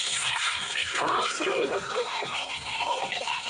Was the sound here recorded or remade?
remade